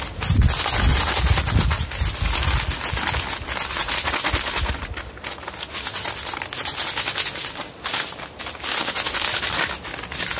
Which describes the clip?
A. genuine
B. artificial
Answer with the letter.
A